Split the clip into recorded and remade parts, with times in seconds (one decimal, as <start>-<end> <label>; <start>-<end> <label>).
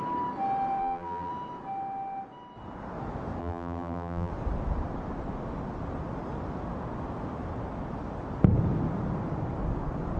0.0-0.8 recorded; 0.8-1.3 remade; 1.3-3.4 recorded; 3.4-4.3 remade; 4.3-10.2 recorded